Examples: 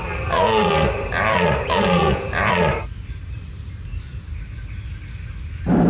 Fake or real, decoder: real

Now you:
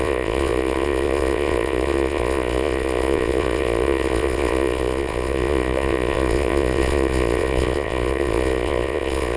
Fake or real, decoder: fake, vocoder, Vocos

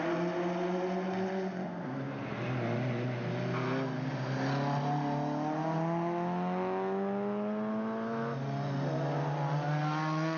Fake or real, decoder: real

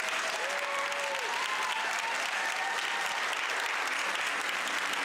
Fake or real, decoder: real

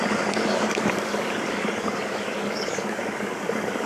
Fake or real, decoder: fake, codec, DAC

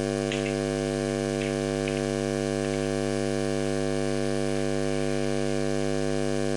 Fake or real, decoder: real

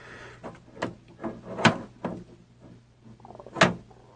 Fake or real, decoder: real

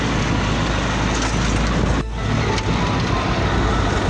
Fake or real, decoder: real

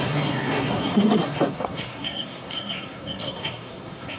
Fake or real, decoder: fake, codec, SNAC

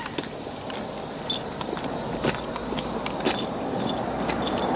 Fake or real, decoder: real